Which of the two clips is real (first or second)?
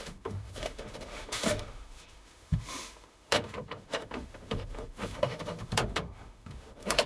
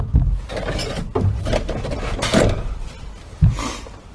second